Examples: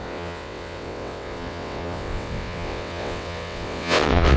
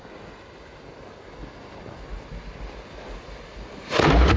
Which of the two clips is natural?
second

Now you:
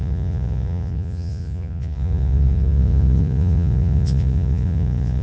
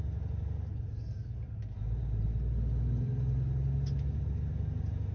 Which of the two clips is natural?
second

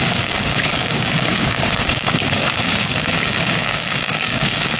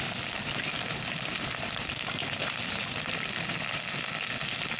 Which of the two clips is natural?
second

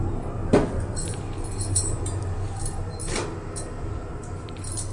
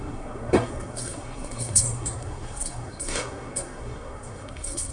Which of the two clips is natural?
first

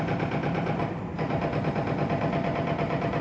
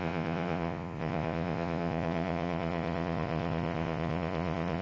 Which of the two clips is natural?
first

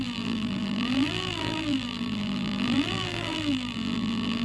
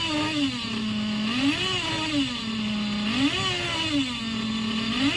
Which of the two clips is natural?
second